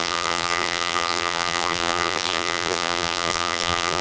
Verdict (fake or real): fake